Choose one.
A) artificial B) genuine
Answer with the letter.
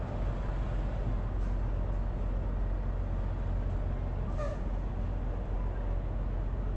B